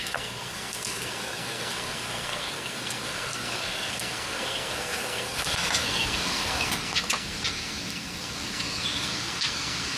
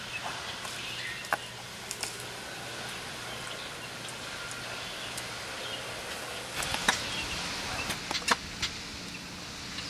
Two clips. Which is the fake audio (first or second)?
first